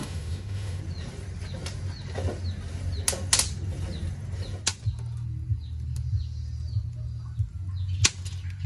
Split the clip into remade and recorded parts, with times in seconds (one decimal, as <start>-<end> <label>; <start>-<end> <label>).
0.0-0.8 remade; 0.8-8.7 recorded